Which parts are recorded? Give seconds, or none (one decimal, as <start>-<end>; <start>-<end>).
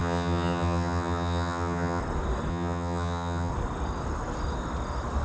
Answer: 2.0-2.5; 3.5-5.2